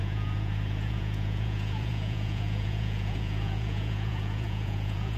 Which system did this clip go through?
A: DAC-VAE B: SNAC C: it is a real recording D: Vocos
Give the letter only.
D